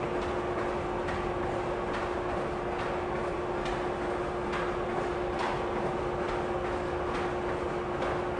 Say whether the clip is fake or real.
real